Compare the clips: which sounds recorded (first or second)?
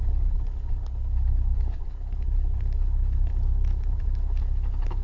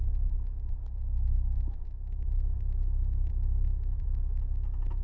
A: second